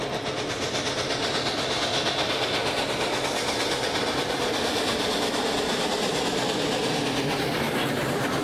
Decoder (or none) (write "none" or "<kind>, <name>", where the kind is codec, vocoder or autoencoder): none